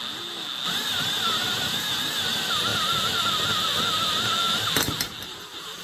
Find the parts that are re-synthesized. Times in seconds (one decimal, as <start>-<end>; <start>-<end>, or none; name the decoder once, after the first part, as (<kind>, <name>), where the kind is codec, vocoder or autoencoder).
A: none